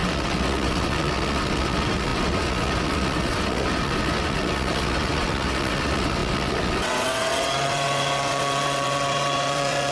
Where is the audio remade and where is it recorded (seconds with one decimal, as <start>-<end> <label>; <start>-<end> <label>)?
0.0-9.9 remade